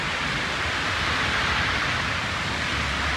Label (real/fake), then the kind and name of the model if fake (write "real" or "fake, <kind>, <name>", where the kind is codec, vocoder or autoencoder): real